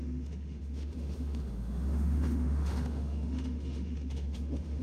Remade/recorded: remade